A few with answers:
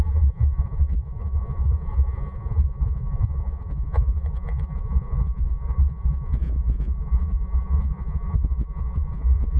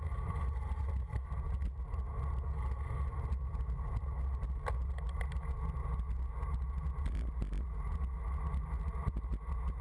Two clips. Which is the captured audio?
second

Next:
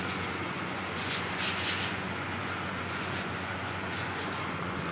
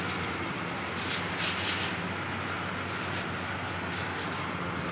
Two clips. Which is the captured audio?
second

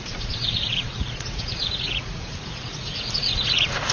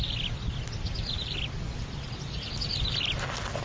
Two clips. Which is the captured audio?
second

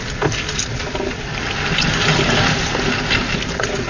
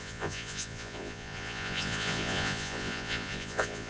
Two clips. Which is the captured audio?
first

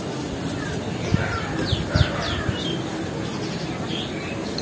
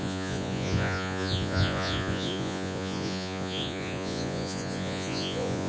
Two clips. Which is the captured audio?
first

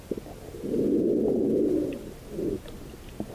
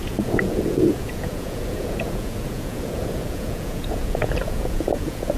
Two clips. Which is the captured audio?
first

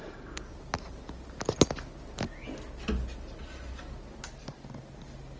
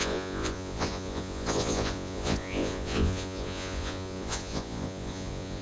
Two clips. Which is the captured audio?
first